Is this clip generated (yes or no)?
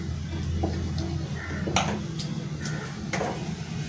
no